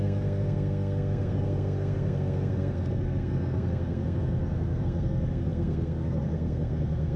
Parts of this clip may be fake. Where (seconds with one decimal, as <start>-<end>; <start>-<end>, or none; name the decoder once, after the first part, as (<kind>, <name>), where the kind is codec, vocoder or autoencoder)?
0.0-7.2 (codec, SNAC)